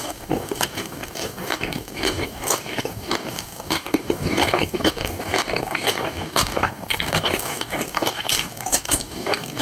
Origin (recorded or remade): remade